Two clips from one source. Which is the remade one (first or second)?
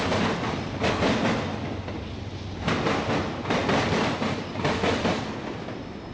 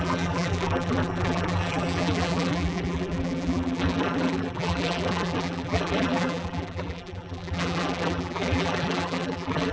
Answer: second